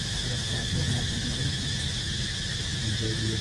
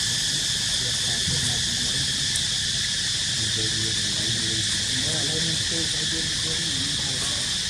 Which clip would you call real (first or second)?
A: second